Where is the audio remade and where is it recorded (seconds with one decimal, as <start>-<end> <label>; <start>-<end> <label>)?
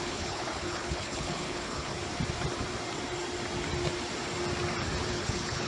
0.0-1.9 remade; 1.9-5.1 recorded; 5.1-5.7 remade